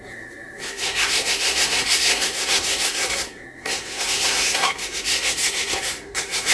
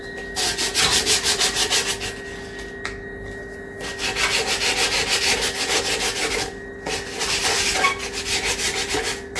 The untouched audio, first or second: second